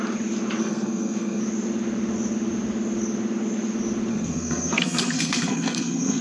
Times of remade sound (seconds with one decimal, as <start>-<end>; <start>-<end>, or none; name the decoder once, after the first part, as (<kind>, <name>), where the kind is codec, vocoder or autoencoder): 0.6-1.4 (codec, SNAC); 4.1-6.2

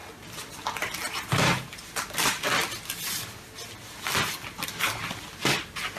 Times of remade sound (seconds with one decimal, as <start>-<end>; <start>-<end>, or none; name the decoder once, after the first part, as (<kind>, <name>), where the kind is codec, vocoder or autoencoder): none

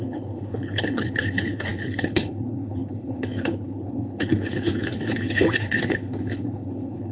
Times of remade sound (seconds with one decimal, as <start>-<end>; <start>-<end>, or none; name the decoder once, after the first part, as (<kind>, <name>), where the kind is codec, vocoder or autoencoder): 0.0-7.1 (codec, HILCodec)

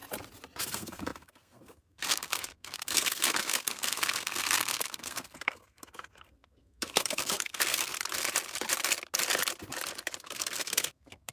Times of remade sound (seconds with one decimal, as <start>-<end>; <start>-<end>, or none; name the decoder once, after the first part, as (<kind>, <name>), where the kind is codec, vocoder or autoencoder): 0.6-7.9 (codec, SNAC); 10.2-11.3

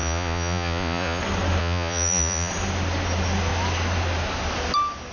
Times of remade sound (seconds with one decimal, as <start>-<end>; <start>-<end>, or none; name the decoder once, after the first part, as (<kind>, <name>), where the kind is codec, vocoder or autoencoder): 0.0-1.2 (vocoder, Vocos); 1.6-2.5

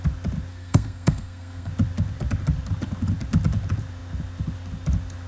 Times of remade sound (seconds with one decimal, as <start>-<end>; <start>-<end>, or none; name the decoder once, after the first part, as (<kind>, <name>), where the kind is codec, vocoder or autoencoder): 0.5-1.7 (codec, SNAC)